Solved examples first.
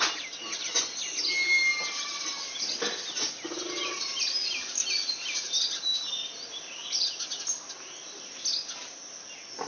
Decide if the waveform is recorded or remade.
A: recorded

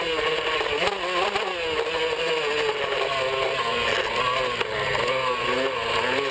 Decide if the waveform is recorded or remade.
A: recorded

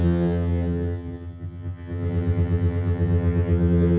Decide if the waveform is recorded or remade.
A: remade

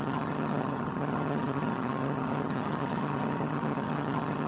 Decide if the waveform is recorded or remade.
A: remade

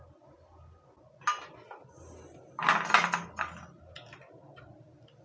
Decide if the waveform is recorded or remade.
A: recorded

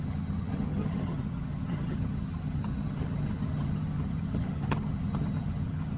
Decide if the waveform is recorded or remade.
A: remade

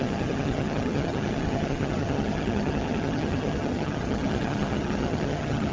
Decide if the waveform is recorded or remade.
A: remade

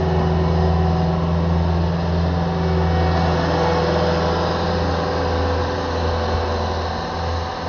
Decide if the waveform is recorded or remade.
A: recorded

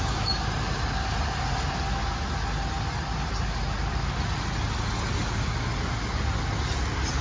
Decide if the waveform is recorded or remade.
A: recorded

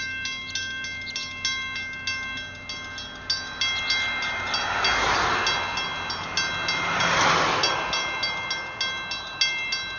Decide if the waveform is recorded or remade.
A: recorded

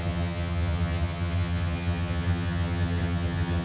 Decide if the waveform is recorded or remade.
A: remade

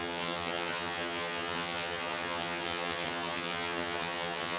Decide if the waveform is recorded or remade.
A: remade